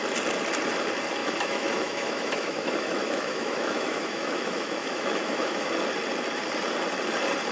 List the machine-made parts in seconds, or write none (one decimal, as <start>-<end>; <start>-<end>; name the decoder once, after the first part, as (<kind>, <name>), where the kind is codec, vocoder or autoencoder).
1.2-5.7 (autoencoder, DAC-VAE)